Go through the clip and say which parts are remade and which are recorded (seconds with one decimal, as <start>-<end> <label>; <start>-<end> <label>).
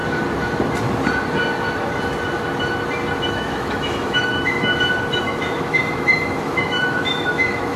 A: 0.0-3.3 recorded; 3.3-4.7 remade; 4.7-5.2 recorded; 5.2-7.8 remade